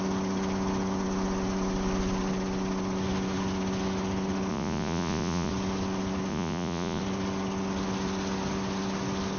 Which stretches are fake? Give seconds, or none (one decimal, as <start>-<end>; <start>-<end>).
4.5-5.5; 6.3-7.0